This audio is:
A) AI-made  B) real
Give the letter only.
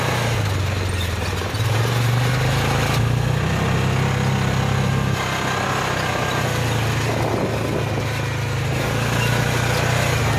B